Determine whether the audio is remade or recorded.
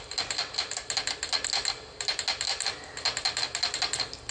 recorded